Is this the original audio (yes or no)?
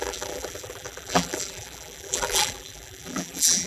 no